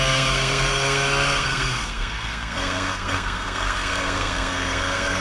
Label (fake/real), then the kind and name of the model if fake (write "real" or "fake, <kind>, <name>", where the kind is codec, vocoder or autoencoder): fake, codec, SNAC